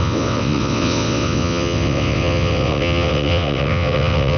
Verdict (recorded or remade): remade